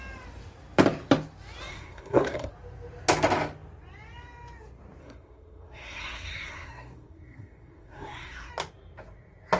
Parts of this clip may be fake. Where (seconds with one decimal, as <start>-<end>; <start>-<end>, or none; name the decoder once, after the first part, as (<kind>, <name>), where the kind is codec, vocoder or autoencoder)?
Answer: 1.7-2.5 (codec, SNAC); 5.0-8.5